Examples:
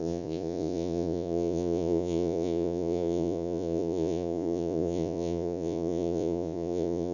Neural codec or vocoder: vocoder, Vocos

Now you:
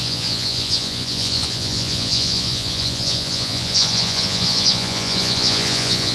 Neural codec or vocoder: vocoder, Vocos